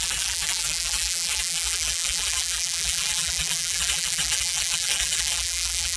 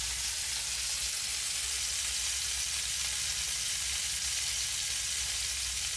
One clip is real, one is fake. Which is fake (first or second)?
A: first